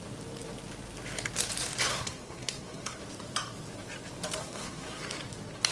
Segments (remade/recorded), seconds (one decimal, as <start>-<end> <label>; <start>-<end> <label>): 0.0-1.9 recorded; 1.9-3.0 remade; 3.0-4.4 recorded; 4.4-5.0 remade; 5.0-5.7 recorded